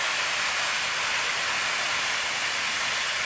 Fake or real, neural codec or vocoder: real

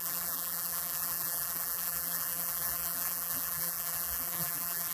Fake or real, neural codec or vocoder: fake, vocoder, BigVGAN v2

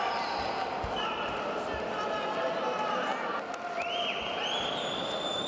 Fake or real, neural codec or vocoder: real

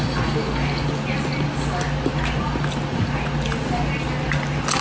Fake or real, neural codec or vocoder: real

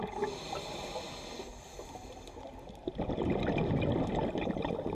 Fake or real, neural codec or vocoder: real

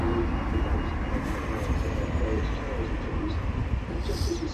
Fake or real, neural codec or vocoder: real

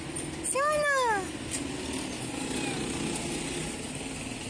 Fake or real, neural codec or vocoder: real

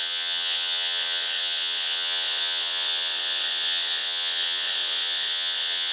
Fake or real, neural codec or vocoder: fake, vocoder, WaveNeXt